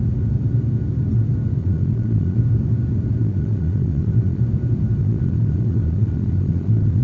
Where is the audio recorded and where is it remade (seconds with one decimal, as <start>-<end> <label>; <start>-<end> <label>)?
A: 0.0-1.6 recorded; 1.6-2.4 remade; 2.4-3.2 recorded; 3.2-4.4 remade; 4.4-5.0 recorded; 5.0-7.0 remade